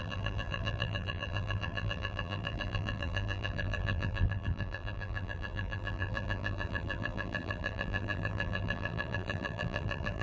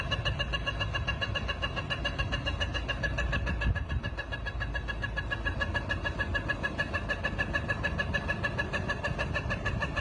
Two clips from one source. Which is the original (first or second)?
second